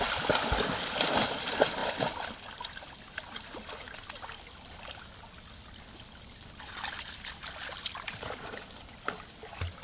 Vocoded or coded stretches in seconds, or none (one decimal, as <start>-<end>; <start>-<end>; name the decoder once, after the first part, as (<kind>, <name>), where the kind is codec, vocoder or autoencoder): none